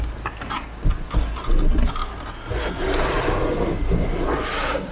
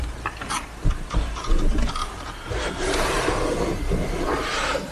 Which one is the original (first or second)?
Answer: first